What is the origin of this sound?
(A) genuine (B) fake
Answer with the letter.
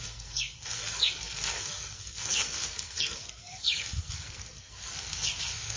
B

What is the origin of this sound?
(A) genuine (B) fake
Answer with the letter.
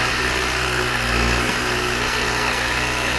B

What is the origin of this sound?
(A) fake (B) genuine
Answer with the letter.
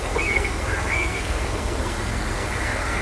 A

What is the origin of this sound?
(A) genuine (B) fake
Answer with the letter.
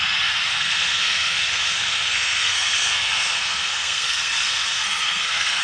B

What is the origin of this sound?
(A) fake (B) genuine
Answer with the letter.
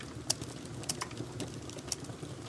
B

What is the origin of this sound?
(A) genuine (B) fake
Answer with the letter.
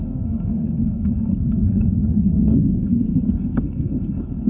B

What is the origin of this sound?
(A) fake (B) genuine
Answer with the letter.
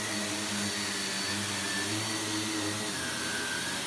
B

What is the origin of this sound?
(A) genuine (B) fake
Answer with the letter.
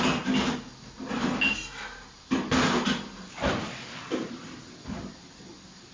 A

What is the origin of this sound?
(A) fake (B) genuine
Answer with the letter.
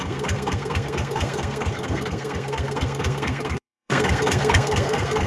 A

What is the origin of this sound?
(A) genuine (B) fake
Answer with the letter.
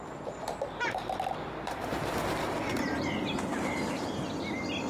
A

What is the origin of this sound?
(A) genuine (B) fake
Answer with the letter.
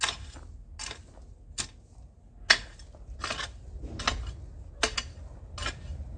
A